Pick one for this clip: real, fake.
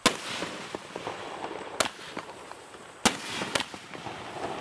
real